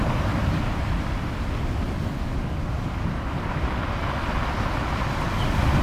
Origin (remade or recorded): recorded